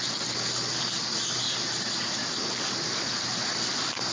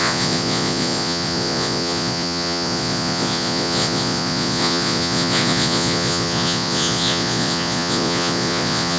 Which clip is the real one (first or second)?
first